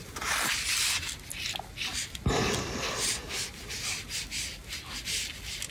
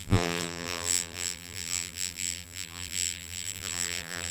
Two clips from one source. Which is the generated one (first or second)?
second